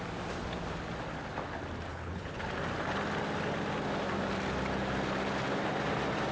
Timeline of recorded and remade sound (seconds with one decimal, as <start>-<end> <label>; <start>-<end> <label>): 0.0-1.9 recorded; 1.9-2.4 remade; 2.4-6.3 recorded

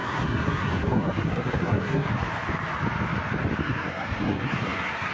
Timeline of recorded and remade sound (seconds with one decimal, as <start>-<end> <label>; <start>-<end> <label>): 0.0-2.1 remade; 2.1-3.6 recorded; 3.6-5.1 remade

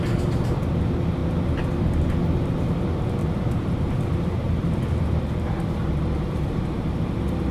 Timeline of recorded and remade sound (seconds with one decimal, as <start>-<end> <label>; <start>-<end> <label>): 0.0-3.2 recorded; 3.2-7.5 remade

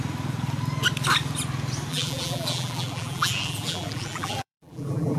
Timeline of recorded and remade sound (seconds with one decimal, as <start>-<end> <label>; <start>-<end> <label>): 0.0-1.9 recorded; 1.9-5.2 remade

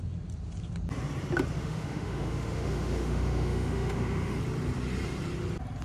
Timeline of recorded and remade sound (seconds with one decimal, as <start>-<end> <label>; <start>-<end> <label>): 0.0-1.6 recorded; 1.6-4.4 remade; 4.4-5.8 recorded